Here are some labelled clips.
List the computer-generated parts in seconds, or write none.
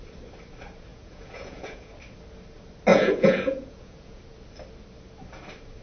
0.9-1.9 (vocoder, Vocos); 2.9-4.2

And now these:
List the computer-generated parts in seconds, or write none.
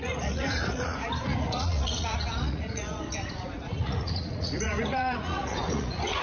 0.0-6.2 (vocoder, Vocos)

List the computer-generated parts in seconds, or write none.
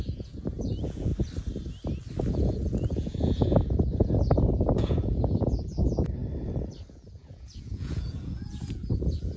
0.0-1.1 (vocoder, Vocos); 2.3-6.2; 6.9-9.4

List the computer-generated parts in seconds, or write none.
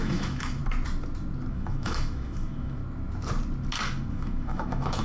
0.0-0.6 (autoencoder, DAC-VAE); 1.5-2.8; 4.1-5.0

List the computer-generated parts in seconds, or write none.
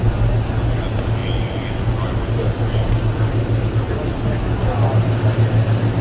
none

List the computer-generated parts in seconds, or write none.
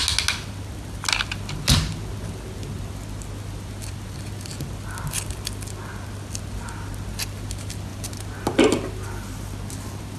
none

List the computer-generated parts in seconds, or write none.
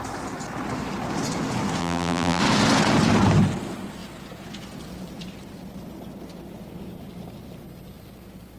1.8-2.4 (vocoder, BigVGAN v2)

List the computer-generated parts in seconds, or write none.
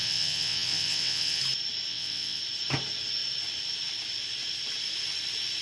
0.0-1.4 (vocoder, WaveNeXt); 1.9-2.4